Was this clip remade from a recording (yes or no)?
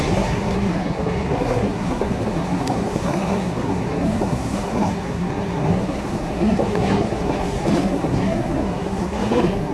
yes